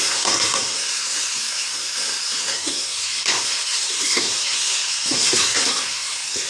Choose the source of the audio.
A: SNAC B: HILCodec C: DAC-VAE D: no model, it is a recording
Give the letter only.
A